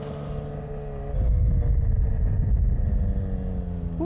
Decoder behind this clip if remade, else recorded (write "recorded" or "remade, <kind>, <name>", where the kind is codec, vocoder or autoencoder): recorded